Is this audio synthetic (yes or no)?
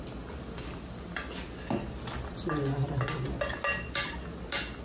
no